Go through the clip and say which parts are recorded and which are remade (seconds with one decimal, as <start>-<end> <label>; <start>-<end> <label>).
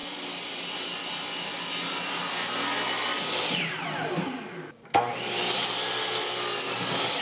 0.0-7.2 recorded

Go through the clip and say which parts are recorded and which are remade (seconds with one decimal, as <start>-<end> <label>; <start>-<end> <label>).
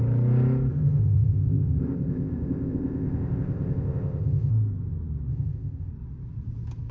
0.0-0.7 recorded; 0.7-4.5 remade; 4.5-5.3 recorded; 5.3-5.9 remade; 5.9-6.9 recorded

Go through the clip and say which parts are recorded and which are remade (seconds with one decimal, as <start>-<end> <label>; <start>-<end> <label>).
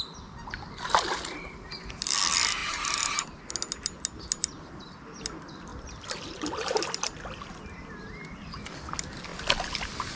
0.0-10.2 recorded